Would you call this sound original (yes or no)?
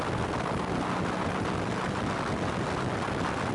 yes